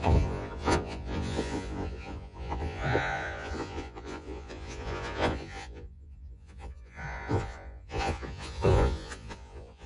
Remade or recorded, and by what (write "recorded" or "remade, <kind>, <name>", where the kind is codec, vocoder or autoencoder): remade, vocoder, Vocos